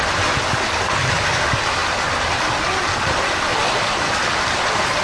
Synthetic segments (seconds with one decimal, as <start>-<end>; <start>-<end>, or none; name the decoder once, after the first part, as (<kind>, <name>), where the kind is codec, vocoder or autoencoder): none